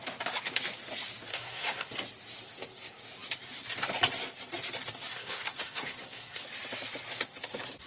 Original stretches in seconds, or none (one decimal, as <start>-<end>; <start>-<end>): 0.0-1.3; 1.9-5.1; 6.4-7.9